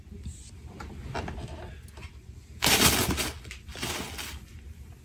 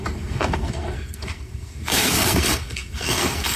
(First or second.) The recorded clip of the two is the first